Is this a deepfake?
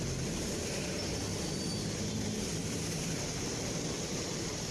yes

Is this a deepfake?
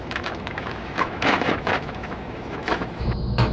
yes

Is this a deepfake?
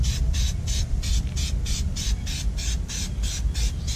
no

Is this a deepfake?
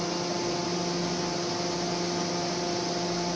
no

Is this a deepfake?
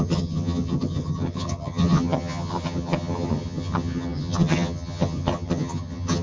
yes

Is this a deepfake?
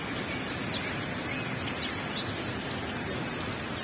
no